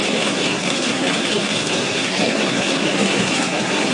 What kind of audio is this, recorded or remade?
remade